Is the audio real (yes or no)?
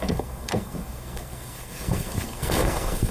no